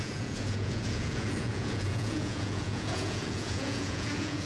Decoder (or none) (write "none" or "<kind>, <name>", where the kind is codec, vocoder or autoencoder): vocoder, Vocos